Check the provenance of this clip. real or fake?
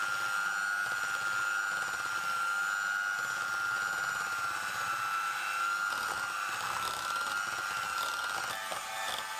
real